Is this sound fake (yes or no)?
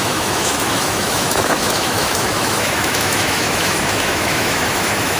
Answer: yes